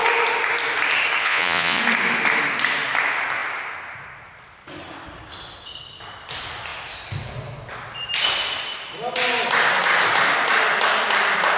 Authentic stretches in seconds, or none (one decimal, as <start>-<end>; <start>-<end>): 0.0-1.2; 1.8-11.6